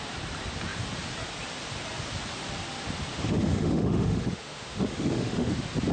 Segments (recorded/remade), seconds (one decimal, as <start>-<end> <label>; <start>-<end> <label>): 0.0-3.1 recorded; 3.1-5.5 remade; 5.5-5.9 recorded